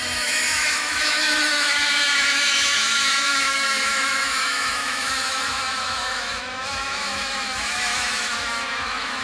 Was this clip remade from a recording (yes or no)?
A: yes